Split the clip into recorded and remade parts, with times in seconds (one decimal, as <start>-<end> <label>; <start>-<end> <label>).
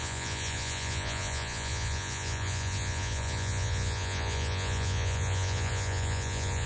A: 0.0-6.7 remade